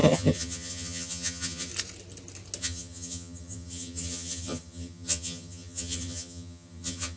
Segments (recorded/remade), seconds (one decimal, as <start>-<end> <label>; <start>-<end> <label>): 0.0-1.7 remade; 1.7-2.6 recorded; 2.6-7.2 remade